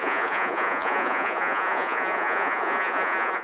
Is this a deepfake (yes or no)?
yes